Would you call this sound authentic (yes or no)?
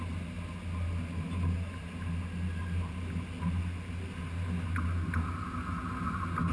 yes